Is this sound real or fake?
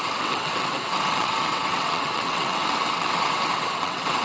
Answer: fake